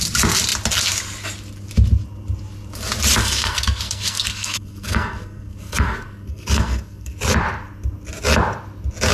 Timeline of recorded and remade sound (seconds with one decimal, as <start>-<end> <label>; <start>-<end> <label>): 0.0-3.2 recorded; 3.2-7.2 remade; 7.2-9.1 recorded